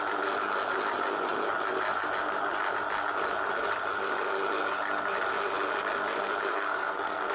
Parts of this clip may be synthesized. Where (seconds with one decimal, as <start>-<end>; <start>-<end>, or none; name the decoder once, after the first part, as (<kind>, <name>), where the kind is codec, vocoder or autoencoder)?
6.5-7.3 (codec, SNAC)